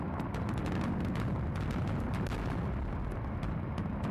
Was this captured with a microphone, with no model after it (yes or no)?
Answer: yes